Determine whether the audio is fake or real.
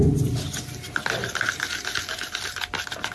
real